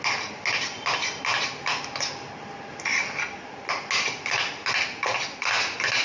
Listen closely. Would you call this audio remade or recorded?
recorded